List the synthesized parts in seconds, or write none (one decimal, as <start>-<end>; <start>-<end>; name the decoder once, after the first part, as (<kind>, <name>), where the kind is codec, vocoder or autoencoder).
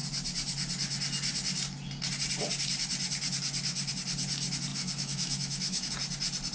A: 4.7-5.9 (autoencoder, DAC-VAE)